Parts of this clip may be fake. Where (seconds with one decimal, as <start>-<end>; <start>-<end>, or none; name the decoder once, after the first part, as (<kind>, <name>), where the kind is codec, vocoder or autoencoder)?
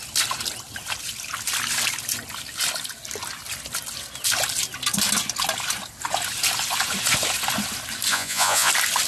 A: 8.1-8.7 (vocoder, Vocos)